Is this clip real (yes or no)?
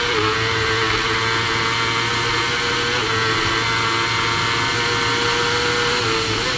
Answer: yes